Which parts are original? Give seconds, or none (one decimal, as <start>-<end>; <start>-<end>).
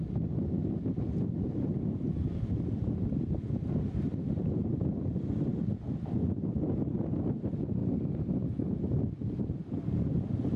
0.0-7.8; 9.4-10.6